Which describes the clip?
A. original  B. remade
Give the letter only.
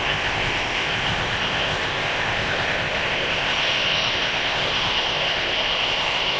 B